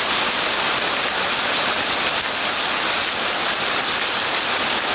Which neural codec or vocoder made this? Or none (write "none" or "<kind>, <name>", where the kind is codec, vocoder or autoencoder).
none